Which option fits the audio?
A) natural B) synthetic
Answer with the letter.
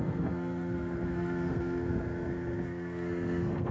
B